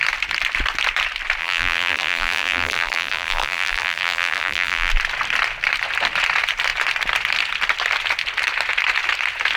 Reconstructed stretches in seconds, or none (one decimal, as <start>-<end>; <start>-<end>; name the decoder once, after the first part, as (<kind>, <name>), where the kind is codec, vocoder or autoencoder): 1.4-4.9 (vocoder, BigVGAN v2)